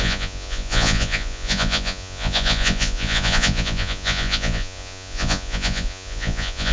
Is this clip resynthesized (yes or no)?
yes